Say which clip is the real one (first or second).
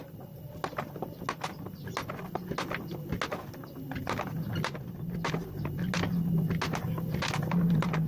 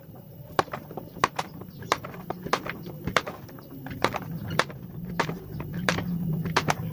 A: first